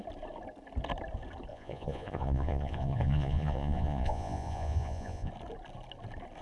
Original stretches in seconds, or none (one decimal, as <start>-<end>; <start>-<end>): 0.0-1.5; 5.3-6.4